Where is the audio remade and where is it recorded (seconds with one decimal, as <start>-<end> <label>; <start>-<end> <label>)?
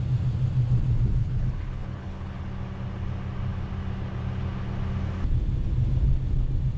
0.0-1.2 recorded; 1.2-2.4 remade; 2.4-6.8 recorded